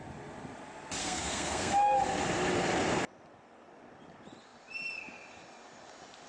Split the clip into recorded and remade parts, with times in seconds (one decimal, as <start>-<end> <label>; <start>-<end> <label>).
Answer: 0.0-1.0 recorded; 1.0-1.7 remade; 1.7-6.3 recorded